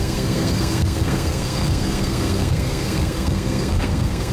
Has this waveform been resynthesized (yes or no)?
yes